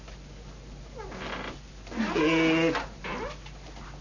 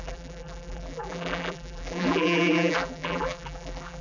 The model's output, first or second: second